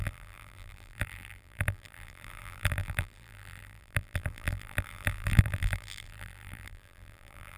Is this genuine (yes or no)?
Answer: no